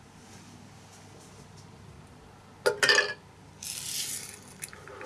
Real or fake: real